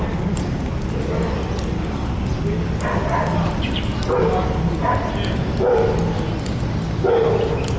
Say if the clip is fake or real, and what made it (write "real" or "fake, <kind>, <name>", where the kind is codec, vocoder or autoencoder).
real